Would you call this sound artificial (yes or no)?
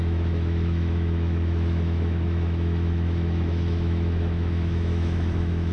yes